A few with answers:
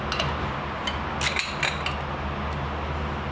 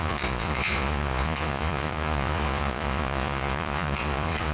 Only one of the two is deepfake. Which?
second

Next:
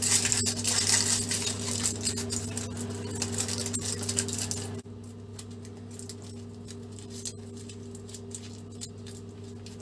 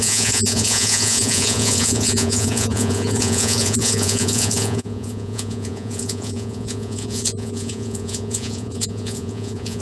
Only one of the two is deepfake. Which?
second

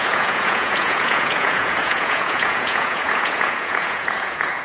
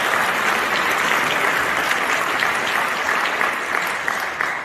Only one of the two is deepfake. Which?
first